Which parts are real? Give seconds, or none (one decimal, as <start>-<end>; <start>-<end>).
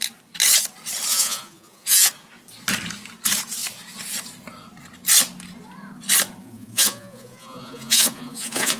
0.0-1.1; 2.1-6.4